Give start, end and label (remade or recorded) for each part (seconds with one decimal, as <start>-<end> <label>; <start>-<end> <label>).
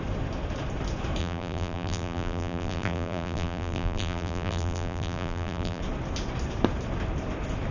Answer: 0.0-1.2 recorded; 1.2-5.8 remade; 5.8-7.7 recorded